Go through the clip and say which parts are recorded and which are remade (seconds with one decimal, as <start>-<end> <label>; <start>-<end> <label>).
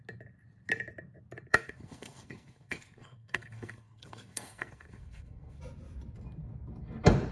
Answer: 0.0-1.5 recorded; 1.5-5.6 remade; 5.6-7.3 recorded